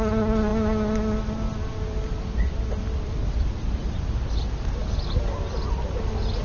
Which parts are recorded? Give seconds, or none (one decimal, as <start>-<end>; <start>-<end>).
0.0-6.4